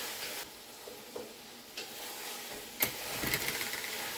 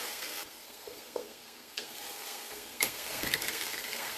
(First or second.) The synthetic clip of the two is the second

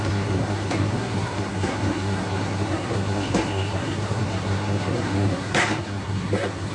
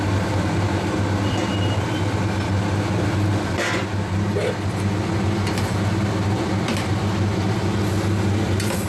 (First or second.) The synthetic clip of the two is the first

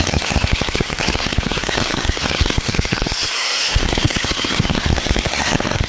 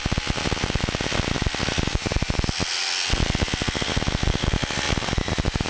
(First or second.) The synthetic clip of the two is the first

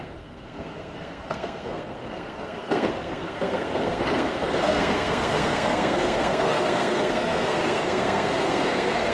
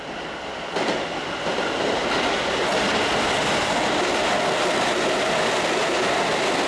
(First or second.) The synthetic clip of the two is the first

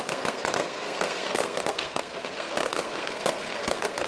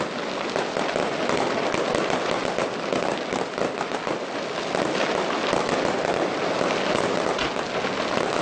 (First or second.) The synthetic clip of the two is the first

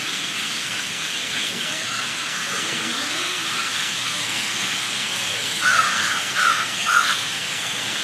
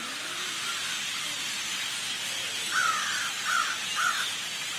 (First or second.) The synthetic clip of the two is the first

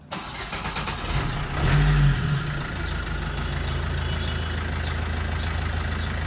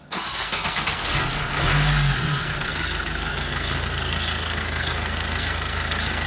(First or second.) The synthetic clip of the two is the second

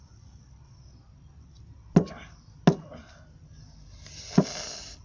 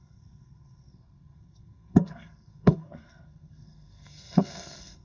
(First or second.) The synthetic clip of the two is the second